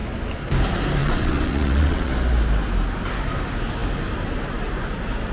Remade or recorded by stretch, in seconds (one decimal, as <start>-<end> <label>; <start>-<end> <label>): 0.0-1.0 recorded; 1.0-2.1 remade; 2.1-5.3 recorded